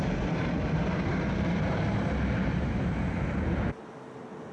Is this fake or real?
fake